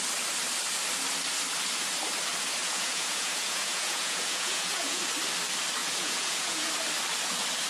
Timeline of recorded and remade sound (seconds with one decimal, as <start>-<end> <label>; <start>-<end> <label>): 0.0-2.6 recorded; 2.6-5.0 remade; 5.0-5.8 recorded; 5.8-6.7 remade; 6.7-7.7 recorded